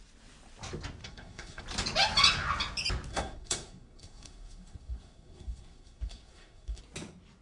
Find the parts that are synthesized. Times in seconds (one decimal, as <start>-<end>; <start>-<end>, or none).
1.0-1.6; 3.1-6.8